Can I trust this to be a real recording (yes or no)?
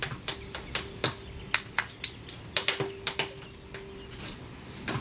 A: yes